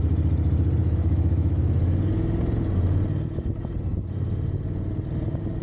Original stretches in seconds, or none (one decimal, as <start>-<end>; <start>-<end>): 0.0-0.8; 1.6-5.6